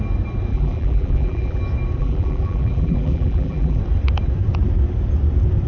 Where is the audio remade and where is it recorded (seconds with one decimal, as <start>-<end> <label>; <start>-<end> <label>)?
0.0-0.5 recorded; 0.5-1.6 remade; 1.6-2.0 recorded; 2.0-3.8 remade; 3.8-5.7 recorded